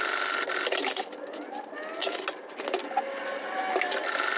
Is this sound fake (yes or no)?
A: no